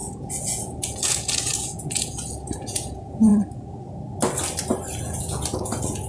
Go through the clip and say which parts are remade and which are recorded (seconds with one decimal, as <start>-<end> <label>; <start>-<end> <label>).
0.0-3.3 remade; 3.3-5.0 recorded; 5.0-6.1 remade